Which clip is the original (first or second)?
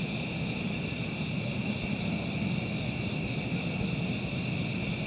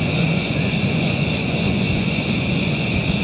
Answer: first